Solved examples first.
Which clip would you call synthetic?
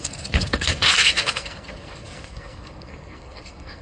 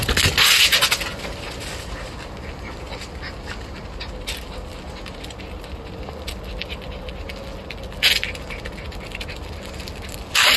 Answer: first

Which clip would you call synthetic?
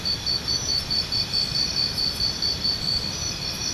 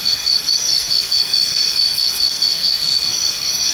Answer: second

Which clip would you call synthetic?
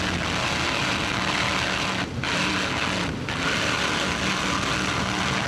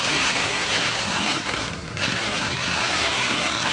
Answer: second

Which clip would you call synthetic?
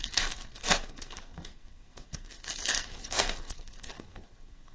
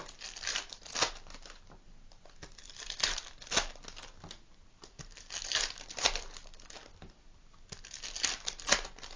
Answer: first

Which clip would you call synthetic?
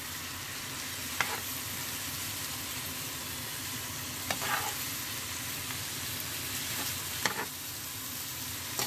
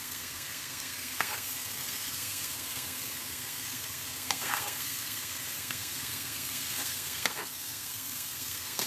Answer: second